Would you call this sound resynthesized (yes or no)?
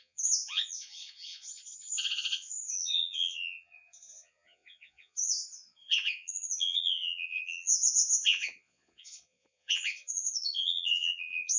yes